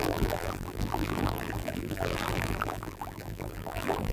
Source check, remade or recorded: remade